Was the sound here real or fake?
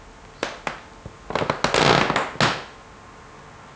real